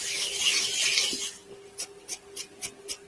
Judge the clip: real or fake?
real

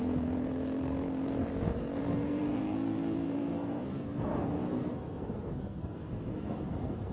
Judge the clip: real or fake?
fake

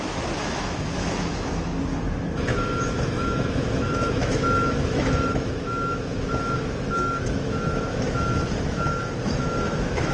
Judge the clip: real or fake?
fake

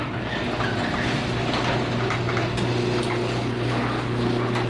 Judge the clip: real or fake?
real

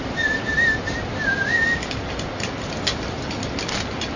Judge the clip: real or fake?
real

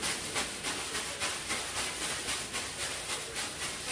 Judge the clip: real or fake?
real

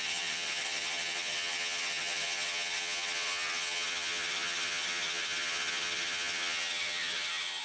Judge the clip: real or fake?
fake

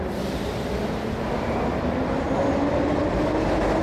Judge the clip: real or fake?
fake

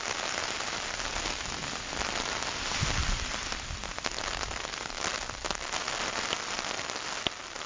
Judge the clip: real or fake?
real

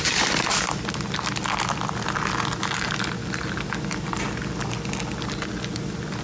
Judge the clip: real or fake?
real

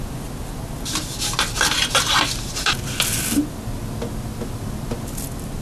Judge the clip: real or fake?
real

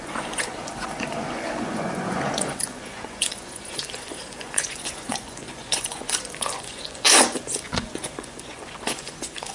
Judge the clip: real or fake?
fake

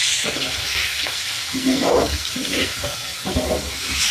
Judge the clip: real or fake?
fake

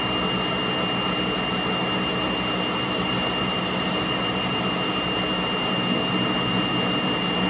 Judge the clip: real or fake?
real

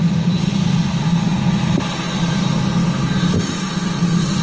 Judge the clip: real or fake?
real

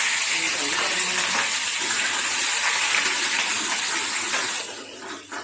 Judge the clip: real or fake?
real